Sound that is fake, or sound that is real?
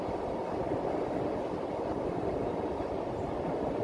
real